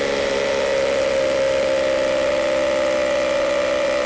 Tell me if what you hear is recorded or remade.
recorded